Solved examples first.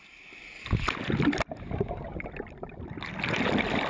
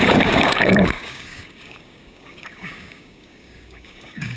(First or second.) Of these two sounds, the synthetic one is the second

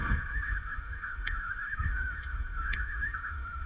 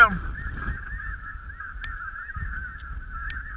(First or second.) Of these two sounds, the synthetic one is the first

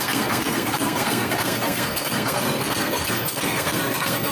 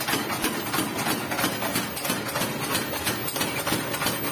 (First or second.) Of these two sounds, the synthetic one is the first